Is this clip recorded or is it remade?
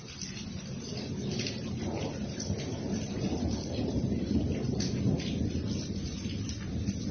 recorded